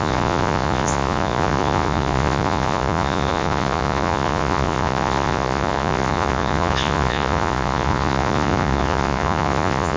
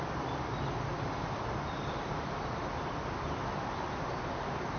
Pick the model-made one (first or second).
first